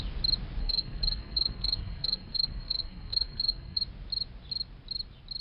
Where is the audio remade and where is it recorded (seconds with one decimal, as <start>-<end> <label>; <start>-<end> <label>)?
0.0-0.6 recorded; 0.6-3.8 remade; 3.8-5.4 recorded